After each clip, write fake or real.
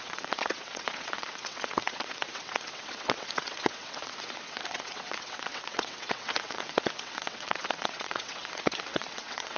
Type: fake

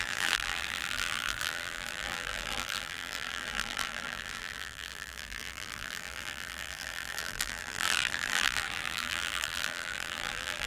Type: fake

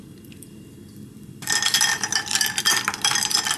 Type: real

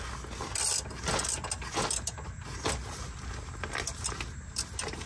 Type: real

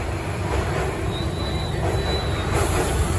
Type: fake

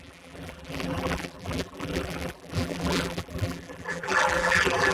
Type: fake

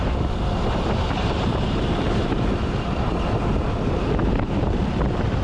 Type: fake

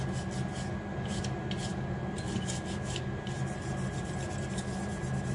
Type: real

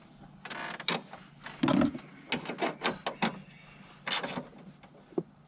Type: real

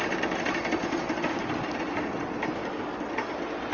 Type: real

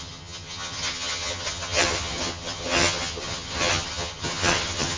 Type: fake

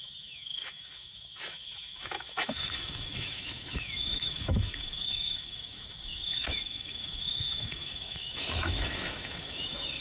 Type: fake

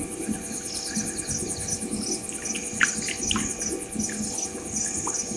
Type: real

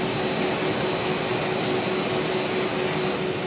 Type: real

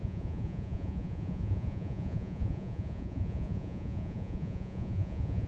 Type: fake